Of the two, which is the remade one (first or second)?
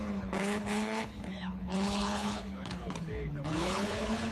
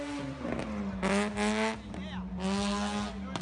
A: first